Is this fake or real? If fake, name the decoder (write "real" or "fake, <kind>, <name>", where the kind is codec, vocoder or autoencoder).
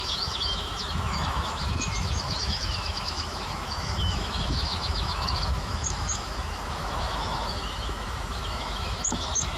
fake, autoencoder, DAC-VAE